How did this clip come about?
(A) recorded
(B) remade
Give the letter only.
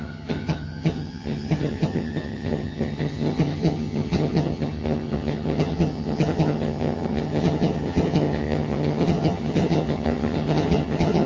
B